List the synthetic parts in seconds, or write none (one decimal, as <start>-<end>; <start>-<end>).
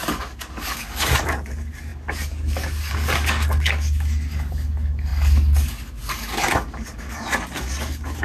0.0-8.2